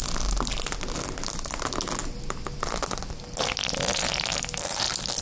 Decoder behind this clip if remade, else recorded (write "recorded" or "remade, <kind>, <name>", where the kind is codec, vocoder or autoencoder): recorded